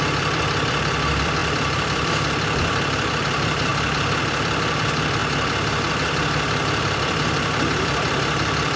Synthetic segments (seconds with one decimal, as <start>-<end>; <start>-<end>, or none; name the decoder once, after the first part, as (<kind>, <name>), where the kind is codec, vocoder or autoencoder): 0.0-3.7 (vocoder, BigVGAN v2); 4.2-5.2; 5.9-8.8